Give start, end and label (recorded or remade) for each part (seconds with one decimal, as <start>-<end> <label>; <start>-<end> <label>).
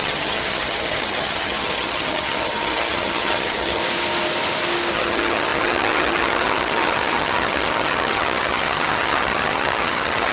0.0-3.8 remade; 3.8-4.9 recorded; 4.9-10.3 remade